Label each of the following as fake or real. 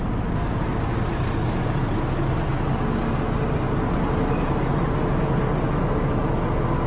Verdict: real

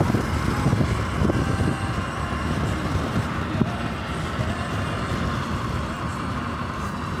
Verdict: real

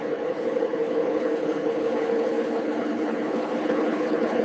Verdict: fake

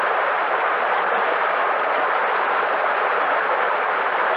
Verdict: real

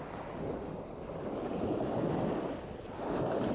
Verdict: real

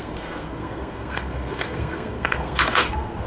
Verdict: fake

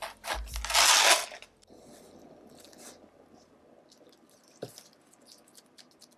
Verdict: real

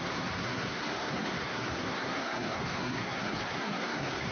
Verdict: fake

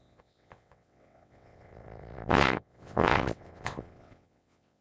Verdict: fake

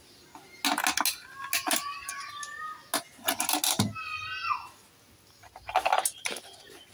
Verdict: real